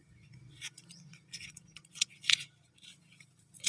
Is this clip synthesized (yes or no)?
yes